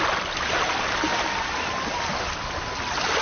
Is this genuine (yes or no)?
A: yes